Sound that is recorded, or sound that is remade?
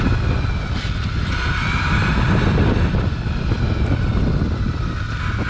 recorded